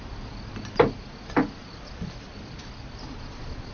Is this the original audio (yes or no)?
yes